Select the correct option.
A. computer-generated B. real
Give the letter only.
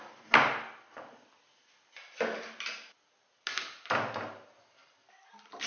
B